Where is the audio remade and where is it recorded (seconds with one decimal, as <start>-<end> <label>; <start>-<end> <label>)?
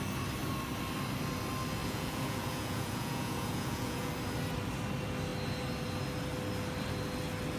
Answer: 0.0-1.8 recorded; 1.8-4.1 remade; 4.1-7.6 recorded